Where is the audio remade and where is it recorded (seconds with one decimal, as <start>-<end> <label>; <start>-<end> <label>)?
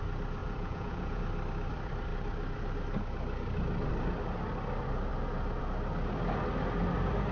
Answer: 0.0-0.4 recorded; 0.4-1.2 remade; 1.2-7.3 recorded